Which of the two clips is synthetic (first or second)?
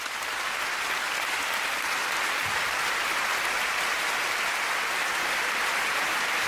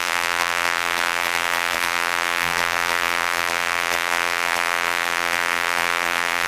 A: second